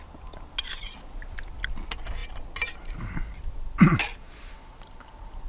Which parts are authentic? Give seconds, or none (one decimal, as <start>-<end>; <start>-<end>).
0.0-5.5